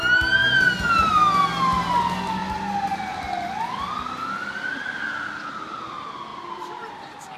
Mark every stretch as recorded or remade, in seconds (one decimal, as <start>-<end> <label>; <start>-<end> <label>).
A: 0.0-7.4 recorded